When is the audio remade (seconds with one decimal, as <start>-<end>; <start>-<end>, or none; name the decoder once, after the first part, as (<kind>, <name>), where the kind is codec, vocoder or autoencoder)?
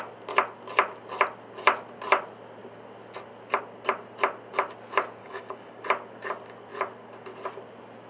5.2-5.8 (codec, DAC)